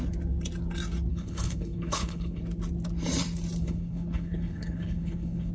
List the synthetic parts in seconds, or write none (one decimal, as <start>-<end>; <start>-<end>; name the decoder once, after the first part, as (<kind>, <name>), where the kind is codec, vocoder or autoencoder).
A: 1.1-2.4 (codec, HILCodec); 3.6-5.5